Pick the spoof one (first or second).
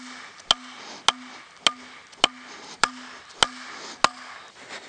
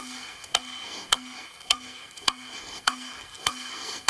second